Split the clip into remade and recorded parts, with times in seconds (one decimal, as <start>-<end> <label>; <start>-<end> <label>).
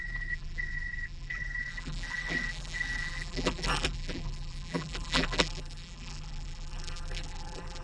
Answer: 0.0-7.8 remade